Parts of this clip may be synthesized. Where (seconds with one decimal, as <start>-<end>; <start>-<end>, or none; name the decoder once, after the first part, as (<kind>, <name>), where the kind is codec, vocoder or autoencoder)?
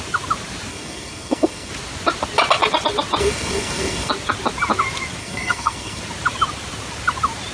0.7-1.7 (codec, SNAC); 3.2-4.1; 5.2-6.0